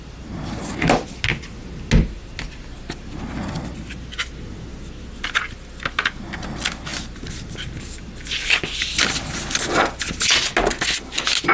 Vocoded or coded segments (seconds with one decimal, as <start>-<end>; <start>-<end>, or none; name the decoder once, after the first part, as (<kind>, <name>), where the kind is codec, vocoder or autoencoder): none